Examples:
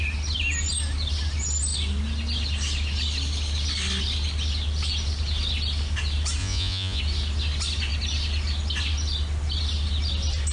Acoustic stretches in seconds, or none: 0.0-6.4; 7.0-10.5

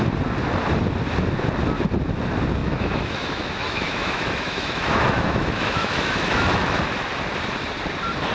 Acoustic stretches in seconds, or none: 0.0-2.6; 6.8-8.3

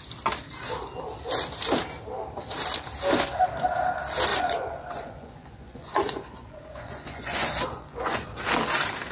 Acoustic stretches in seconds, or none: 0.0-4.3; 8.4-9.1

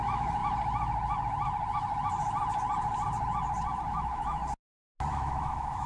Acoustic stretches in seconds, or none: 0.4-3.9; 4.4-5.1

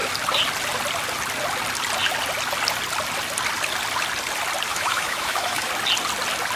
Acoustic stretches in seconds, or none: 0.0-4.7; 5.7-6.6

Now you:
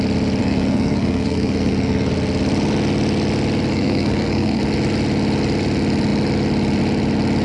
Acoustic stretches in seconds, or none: 0.0-0.4; 2.1-3.7; 4.6-7.4

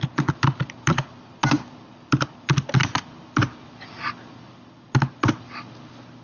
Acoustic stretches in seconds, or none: 0.0-6.2